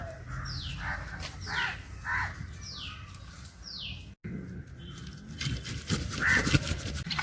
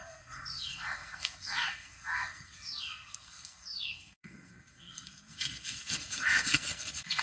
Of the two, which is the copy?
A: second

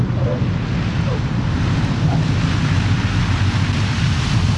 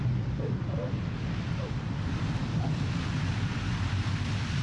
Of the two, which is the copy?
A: second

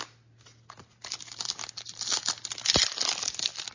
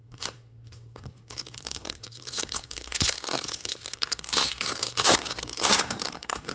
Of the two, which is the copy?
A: second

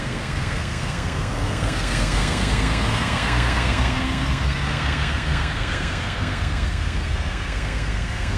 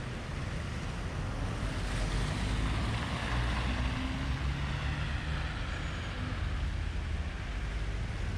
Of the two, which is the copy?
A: first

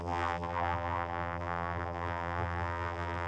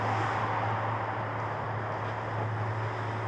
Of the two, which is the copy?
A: first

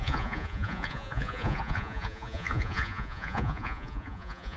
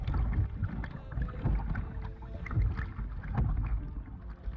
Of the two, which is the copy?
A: first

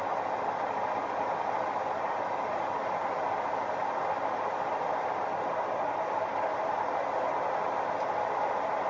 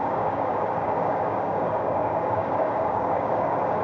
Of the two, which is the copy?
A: second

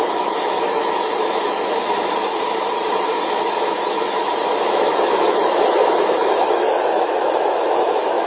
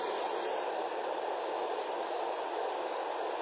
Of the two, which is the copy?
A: first